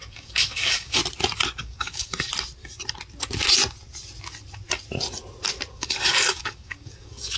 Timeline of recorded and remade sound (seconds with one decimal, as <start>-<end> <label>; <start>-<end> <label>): 0.0-1.0 remade; 1.0-1.6 recorded; 1.6-2.3 remade; 2.3-5.7 recorded; 5.7-7.4 remade